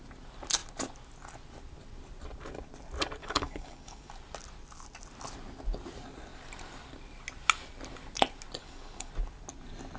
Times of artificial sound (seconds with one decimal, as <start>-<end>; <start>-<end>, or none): 3.2-4.1; 8.6-9.1